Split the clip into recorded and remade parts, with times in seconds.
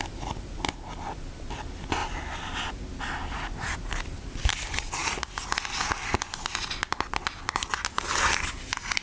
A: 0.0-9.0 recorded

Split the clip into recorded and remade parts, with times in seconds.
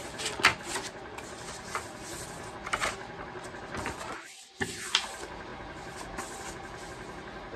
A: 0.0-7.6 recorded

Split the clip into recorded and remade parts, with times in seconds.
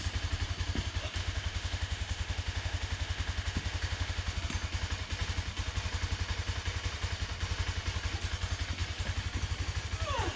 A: 0.0-1.2 recorded; 1.2-4.4 remade; 4.4-10.4 recorded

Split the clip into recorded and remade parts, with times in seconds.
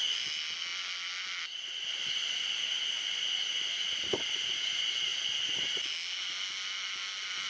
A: 0.0-7.5 recorded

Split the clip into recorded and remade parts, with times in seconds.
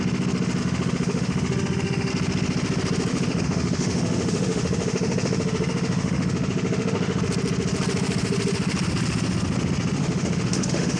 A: 0.0-0.6 recorded; 0.6-2.1 remade; 2.1-3.1 recorded; 3.1-7.2 remade; 7.2-10.0 recorded; 10.0-11.0 remade